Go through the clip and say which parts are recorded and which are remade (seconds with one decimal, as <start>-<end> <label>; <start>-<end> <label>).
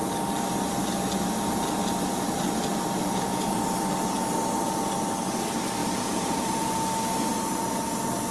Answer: 0.0-3.0 recorded; 3.0-3.6 remade; 3.6-5.8 recorded; 5.8-6.7 remade; 6.7-8.3 recorded